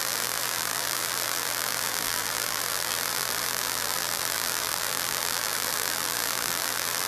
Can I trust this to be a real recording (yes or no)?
no